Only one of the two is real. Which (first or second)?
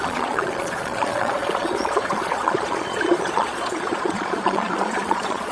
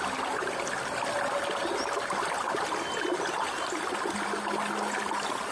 second